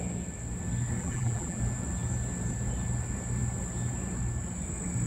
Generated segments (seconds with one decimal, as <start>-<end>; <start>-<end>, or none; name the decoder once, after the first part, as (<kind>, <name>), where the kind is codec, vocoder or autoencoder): 1.0-1.6 (vocoder, BigVGAN v2)